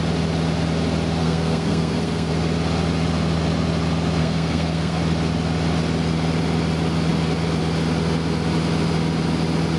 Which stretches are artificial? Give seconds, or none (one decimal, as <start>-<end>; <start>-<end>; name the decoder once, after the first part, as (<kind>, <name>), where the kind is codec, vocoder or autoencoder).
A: 1.2-2.3 (codec, SNAC); 4.2-5.0